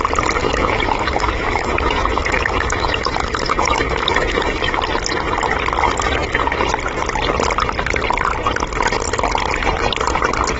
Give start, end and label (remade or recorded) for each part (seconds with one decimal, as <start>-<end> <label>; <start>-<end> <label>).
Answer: 0.0-0.4 recorded; 0.4-4.8 remade; 4.8-10.6 recorded